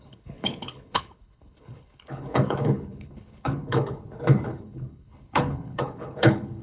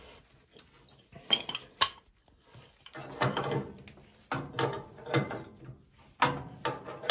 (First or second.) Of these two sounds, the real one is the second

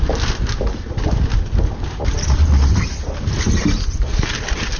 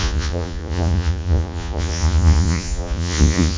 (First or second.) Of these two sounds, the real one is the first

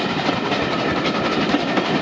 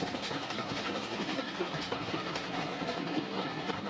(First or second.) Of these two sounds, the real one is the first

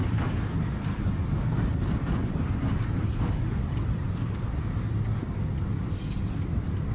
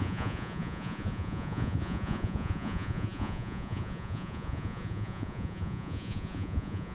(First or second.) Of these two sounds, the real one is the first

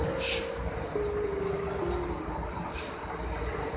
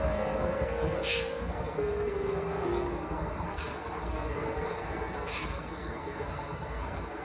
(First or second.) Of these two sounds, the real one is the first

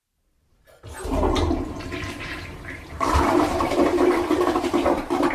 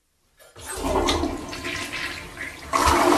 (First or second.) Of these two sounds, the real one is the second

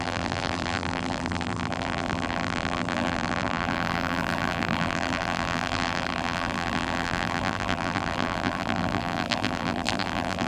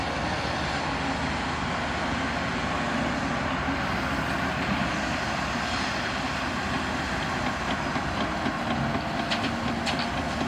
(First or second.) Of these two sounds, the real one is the second